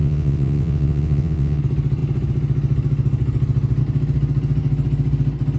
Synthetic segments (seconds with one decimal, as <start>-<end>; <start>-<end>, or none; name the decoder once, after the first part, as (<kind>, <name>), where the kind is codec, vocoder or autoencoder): 0.0-1.6 (vocoder, WaveNeXt)